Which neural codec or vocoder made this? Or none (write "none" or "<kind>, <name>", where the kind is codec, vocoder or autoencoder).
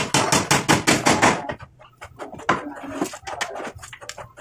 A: none